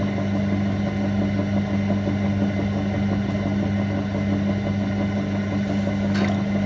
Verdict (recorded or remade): recorded